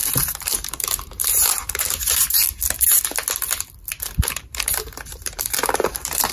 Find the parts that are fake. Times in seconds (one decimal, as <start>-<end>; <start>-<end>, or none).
0.0-2.4; 4.4-6.3